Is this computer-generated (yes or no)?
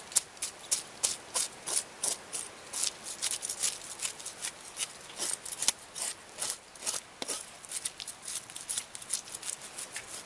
no